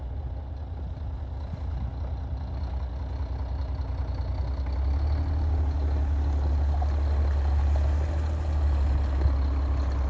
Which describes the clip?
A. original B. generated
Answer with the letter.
A